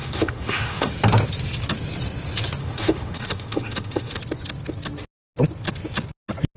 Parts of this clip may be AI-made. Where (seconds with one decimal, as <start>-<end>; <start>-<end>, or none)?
0.0-0.9; 2.6-4.2